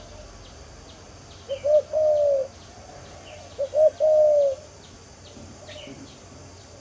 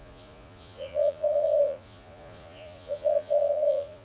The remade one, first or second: second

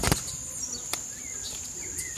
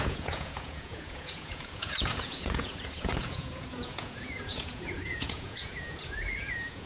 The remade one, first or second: second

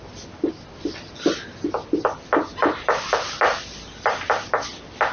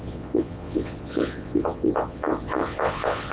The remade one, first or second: second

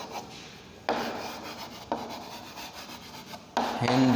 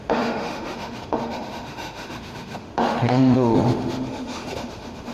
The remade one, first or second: second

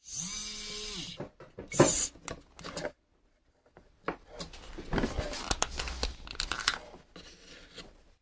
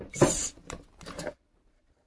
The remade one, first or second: second